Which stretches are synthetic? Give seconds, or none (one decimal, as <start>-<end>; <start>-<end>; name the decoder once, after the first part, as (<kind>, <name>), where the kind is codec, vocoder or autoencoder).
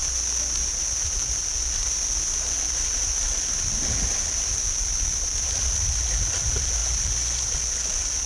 none